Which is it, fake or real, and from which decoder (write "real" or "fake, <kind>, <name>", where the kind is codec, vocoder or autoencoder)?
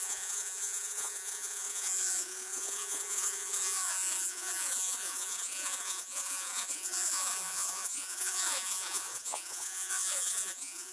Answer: fake, vocoder, Vocos